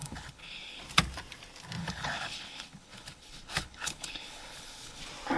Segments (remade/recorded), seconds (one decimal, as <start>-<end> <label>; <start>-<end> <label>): 0.0-0.8 remade; 0.8-1.8 recorded; 1.8-5.0 remade; 5.0-5.4 recorded